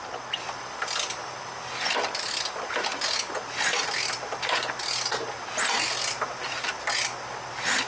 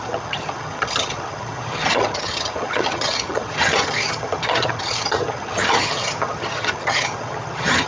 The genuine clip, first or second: first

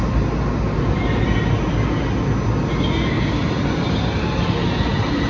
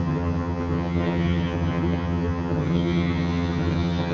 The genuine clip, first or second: first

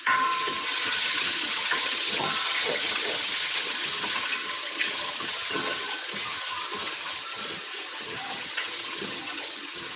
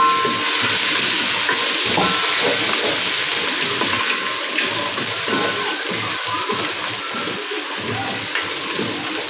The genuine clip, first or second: second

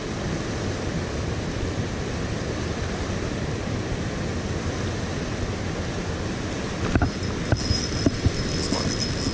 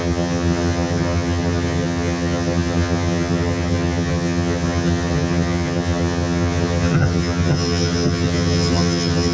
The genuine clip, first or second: first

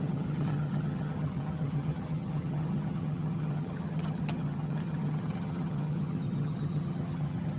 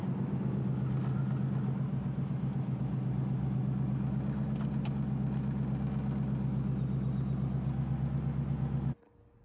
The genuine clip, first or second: second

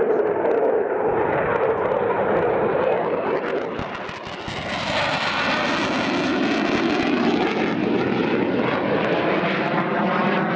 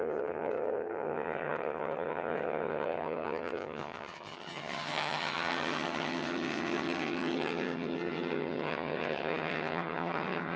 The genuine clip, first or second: first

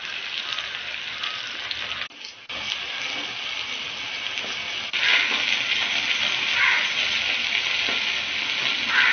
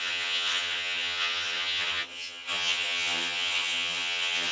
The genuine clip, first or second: first